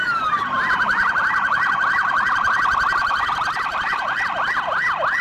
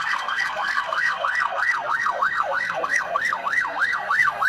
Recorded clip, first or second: first